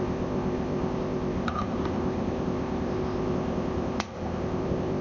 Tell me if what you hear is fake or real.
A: fake